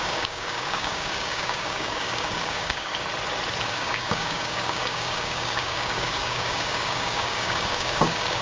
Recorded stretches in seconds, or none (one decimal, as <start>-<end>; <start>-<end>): 2.9-3.6